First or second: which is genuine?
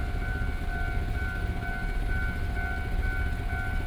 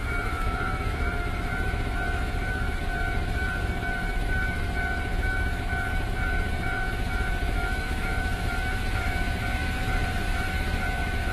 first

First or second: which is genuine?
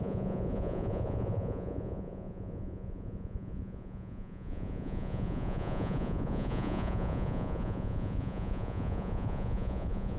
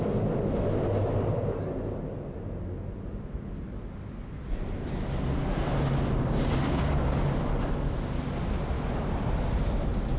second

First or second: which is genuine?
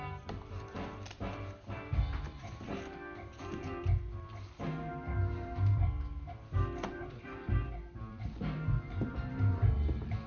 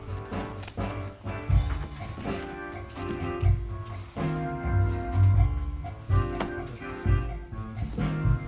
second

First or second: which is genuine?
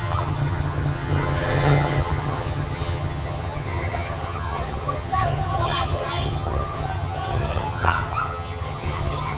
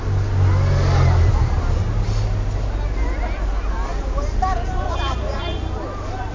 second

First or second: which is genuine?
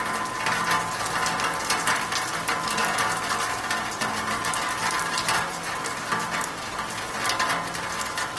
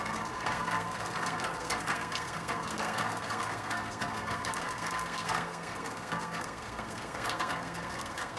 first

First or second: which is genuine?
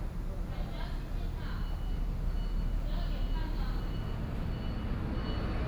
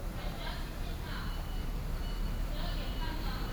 first